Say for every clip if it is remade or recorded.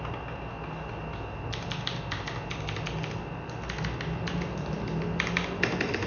recorded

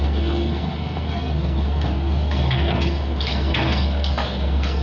remade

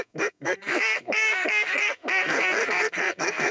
remade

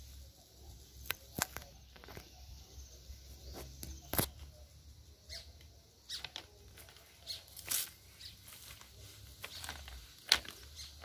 recorded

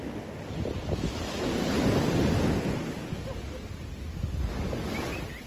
recorded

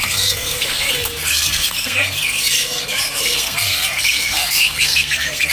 remade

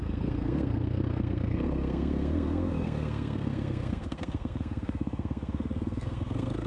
remade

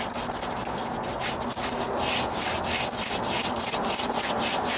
recorded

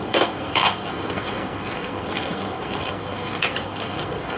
remade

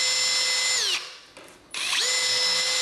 recorded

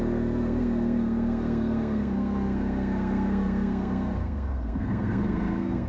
remade